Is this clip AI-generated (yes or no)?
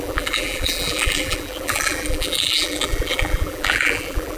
yes